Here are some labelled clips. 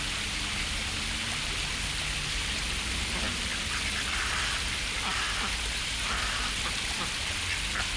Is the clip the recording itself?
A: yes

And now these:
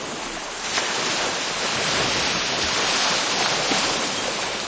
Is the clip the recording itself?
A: yes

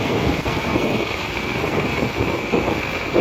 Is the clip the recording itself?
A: no